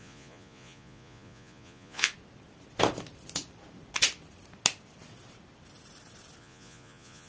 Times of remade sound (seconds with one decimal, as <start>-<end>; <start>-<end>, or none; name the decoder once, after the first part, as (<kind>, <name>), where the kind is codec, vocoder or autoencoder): 0.0-2.1 (vocoder, Vocos); 6.4-7.3